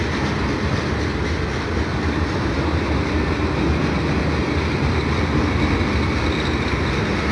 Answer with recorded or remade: recorded